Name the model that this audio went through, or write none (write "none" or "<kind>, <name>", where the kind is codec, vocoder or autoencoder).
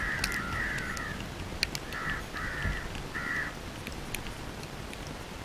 none